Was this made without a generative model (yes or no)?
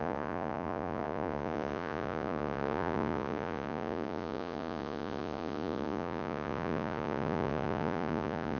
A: no